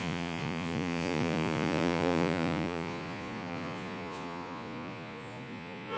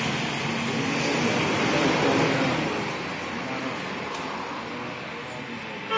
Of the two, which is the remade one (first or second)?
first